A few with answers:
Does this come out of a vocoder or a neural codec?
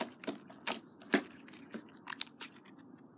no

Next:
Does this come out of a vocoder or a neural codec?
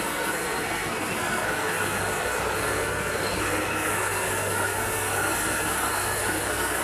yes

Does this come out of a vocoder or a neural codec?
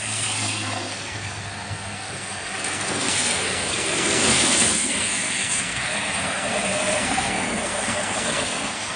yes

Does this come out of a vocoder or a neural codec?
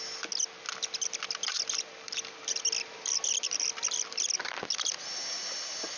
no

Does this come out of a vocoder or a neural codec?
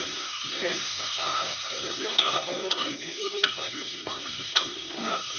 yes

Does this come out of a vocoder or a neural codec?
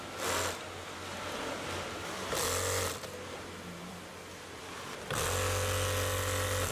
no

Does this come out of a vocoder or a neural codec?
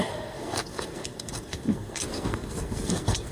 yes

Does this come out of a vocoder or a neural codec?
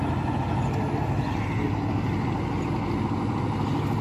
no